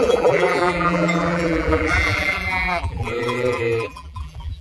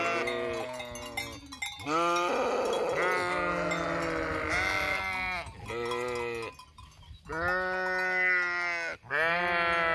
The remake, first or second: first